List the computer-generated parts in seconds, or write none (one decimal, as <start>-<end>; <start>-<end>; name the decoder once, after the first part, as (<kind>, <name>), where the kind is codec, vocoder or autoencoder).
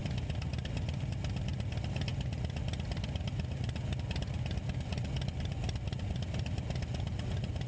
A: none